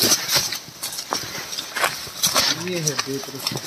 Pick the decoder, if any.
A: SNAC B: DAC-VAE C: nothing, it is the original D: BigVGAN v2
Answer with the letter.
C